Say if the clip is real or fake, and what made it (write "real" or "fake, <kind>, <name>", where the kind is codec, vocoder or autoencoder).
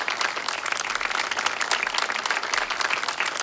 real